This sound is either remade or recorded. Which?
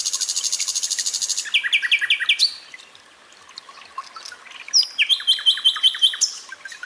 recorded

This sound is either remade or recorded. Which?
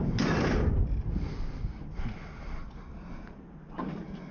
recorded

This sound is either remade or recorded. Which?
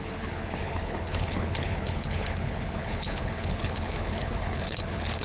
remade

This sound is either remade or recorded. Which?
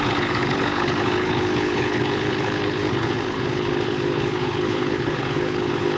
remade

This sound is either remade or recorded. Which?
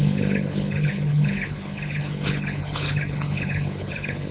remade